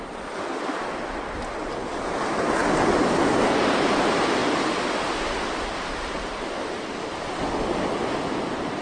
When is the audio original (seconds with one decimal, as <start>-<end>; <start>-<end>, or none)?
0.0-8.8